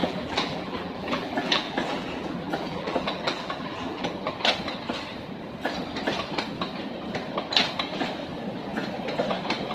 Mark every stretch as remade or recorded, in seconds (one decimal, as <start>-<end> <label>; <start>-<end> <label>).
0.0-4.3 remade; 4.3-9.7 recorded